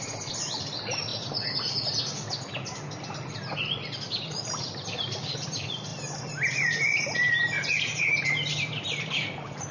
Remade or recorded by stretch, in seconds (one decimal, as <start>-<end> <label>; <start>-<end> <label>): 0.0-1.1 remade; 1.1-2.0 recorded; 2.0-9.7 remade